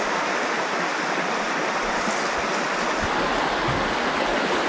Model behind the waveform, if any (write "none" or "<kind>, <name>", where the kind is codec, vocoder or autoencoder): none